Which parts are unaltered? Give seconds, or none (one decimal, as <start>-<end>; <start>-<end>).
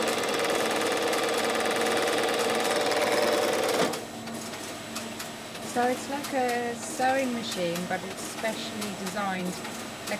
0.0-8.6; 9.4-10.2